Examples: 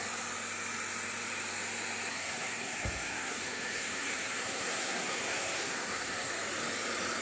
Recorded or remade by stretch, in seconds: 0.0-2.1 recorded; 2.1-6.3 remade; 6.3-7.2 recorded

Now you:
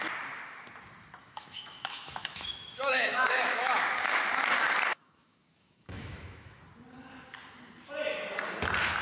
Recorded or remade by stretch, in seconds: 0.0-1.2 recorded; 1.2-4.3 remade; 4.3-4.9 recorded; 4.9-6.6 remade; 6.6-9.0 recorded

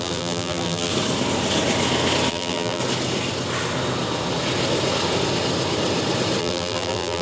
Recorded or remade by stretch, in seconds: 0.0-0.9 remade; 0.9-2.3 recorded; 2.3-2.8 remade; 2.8-6.4 recorded; 6.4-7.2 remade